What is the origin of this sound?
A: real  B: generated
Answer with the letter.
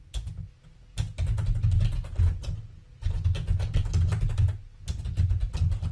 A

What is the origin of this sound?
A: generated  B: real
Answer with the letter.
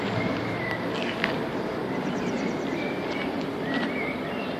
A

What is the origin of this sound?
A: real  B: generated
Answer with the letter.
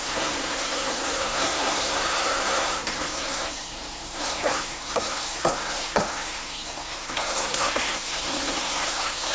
B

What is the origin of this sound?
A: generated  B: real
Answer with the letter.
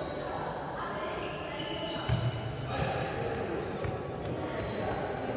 B